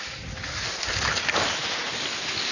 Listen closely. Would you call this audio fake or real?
real